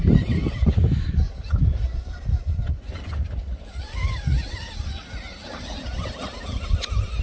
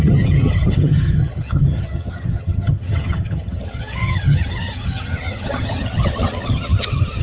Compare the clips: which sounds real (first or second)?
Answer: first